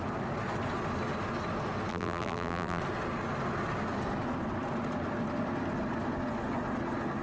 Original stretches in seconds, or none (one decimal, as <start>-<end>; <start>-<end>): 0.0-1.9; 2.8-7.2